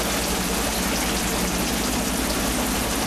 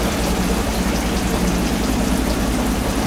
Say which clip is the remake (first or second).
second